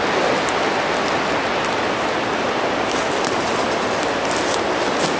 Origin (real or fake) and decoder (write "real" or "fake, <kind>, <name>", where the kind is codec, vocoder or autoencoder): real